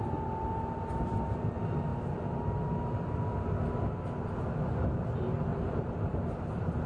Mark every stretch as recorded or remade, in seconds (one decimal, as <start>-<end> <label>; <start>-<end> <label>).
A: 0.0-1.9 recorded; 1.9-4.4 remade; 4.4-5.5 recorded; 5.5-6.9 remade